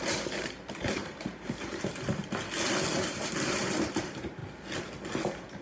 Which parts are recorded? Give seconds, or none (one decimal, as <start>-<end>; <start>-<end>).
2.2-2.9; 4.4-5.6